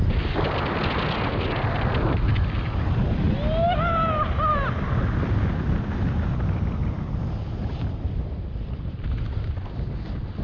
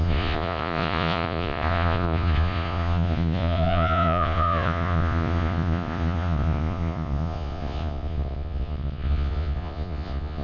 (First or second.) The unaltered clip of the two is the first